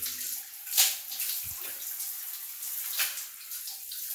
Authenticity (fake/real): real